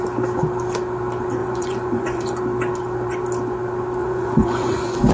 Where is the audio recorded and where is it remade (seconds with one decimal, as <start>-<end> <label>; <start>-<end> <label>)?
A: 0.0-1.4 recorded; 1.4-2.4 remade; 2.4-4.0 recorded; 4.0-5.1 remade